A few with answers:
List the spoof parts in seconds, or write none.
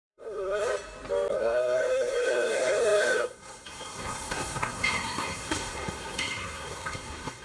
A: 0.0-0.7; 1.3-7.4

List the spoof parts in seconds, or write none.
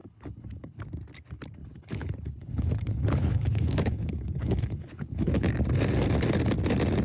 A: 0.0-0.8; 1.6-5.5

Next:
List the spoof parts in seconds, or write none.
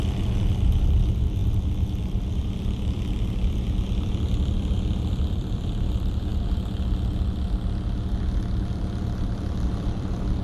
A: 0.0-1.4; 2.0-6.3; 8.7-10.4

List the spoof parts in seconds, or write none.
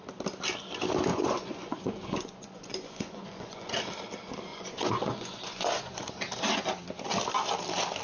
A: 1.1-3.7; 4.5-6.0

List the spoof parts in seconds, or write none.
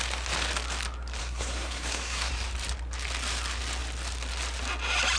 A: 1.2-2.3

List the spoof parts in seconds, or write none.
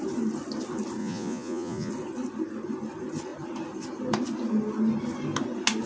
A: 1.0-1.9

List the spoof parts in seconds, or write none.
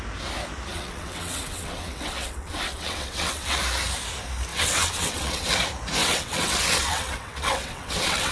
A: 0.7-3.6; 4.5-5.5; 6.0-8.3